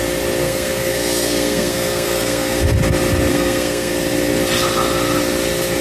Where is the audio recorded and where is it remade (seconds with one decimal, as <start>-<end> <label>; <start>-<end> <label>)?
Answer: 0.0-0.4 recorded; 0.4-2.6 remade; 2.6-3.3 recorded; 3.3-3.9 remade; 3.9-5.8 recorded